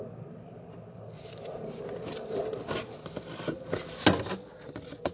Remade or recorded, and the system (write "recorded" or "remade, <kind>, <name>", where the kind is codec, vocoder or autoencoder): recorded